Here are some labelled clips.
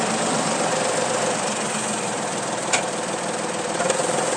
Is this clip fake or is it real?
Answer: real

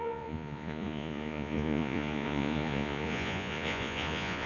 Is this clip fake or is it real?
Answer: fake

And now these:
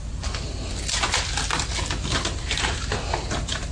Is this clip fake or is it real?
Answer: real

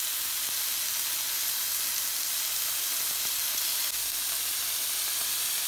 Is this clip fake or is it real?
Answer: real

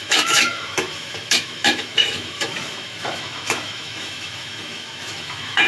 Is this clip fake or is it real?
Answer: fake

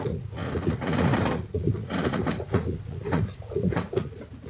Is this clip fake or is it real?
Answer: fake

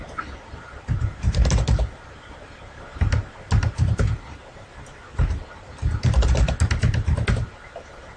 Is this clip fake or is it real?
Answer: real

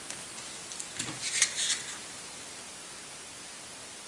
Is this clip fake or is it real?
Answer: real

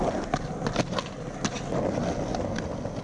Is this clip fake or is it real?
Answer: real